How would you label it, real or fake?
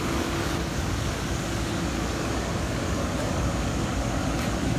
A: fake